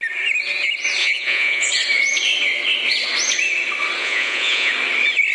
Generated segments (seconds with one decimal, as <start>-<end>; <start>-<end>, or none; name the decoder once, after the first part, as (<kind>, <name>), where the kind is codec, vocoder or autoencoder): 1.0-1.7 (vocoder, Vocos); 4.0-4.7